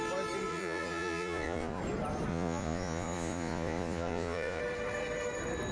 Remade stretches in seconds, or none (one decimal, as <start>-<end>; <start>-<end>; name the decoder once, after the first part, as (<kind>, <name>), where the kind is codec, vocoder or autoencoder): 0.5-1.8 (vocoder, Vocos); 2.3-4.6